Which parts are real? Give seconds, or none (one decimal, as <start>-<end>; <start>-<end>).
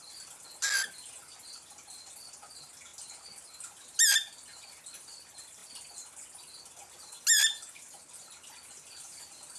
0.0-9.6